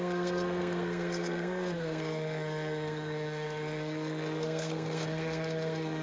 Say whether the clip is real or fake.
fake